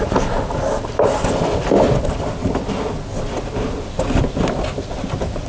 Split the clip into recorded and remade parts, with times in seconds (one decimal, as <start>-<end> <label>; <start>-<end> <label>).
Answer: 0.0-5.5 recorded